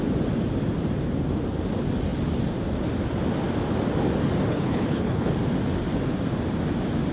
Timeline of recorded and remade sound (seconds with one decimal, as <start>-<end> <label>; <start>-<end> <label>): 0.0-4.5 recorded; 4.5-5.3 remade; 5.3-7.1 recorded